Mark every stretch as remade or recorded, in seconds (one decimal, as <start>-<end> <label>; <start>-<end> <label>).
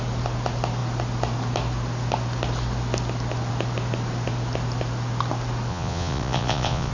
0.0-5.7 recorded; 5.7-6.9 remade